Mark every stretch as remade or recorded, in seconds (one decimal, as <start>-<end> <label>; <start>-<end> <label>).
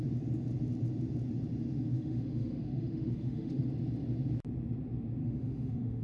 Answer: 0.0-1.7 recorded; 1.7-3.6 remade; 3.6-5.2 recorded; 5.2-6.0 remade